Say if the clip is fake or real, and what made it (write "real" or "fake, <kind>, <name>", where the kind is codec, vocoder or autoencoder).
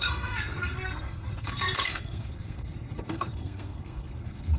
fake, codec, SNAC